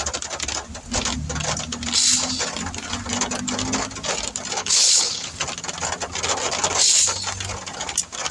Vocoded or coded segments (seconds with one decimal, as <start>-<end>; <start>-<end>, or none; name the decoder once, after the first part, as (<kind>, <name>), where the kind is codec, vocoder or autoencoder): 4.6-5.3 (codec, HILCodec)